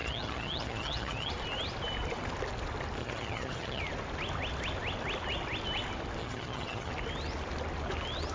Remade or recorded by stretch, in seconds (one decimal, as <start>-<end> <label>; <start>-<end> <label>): 0.0-1.3 remade; 1.3-3.0 recorded; 3.0-3.8 remade; 3.8-6.2 recorded; 6.2-6.9 remade; 6.9-8.3 recorded